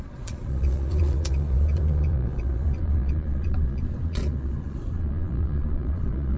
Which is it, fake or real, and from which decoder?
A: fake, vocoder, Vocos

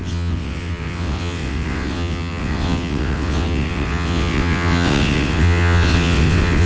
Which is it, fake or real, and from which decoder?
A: fake, vocoder, WaveNeXt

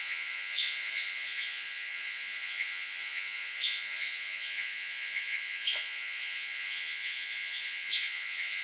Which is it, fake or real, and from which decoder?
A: fake, vocoder, Vocos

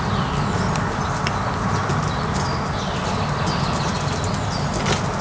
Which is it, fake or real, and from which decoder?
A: real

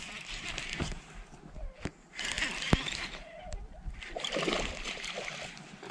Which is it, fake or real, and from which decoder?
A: real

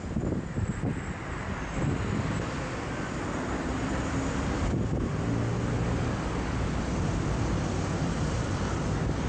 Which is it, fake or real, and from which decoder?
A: real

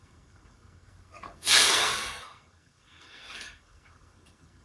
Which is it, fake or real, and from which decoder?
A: fake, codec, SNAC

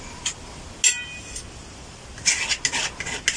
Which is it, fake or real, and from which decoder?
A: real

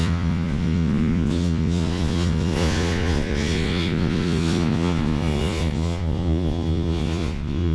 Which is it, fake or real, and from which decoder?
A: fake, vocoder, Vocos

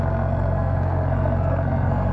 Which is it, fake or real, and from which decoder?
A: fake, codec, SNAC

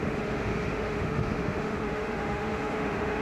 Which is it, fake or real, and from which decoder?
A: fake, autoencoder, DAC-VAE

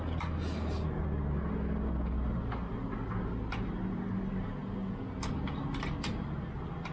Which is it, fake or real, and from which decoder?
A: real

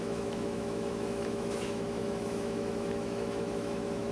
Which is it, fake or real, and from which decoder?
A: fake, autoencoder, DAC-VAE